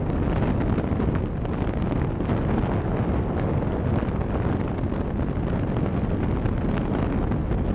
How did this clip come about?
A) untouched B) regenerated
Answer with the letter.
A